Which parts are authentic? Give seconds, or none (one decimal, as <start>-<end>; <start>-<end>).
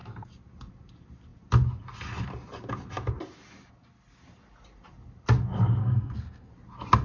0.0-5.8; 6.5-7.0